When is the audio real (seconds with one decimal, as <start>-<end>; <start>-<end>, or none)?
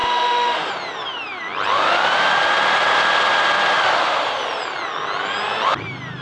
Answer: 0.7-6.2